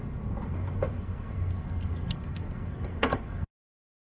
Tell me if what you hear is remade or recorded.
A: remade